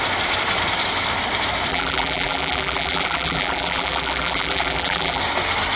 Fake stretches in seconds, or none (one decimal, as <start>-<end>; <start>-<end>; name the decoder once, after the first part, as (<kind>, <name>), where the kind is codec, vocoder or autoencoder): 1.7-5.2 (vocoder, BigVGAN v2)